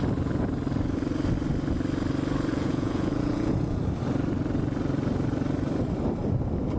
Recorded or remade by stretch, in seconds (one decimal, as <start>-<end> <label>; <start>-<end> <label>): 0.0-2.5 recorded; 2.5-3.8 remade; 3.8-6.8 recorded